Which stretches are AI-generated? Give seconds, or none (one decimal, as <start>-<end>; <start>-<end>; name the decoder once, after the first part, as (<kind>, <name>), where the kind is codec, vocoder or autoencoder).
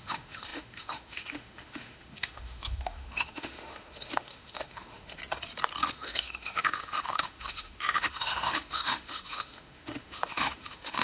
0.0-5.2 (autoencoder, DAC-VAE); 5.9-11.0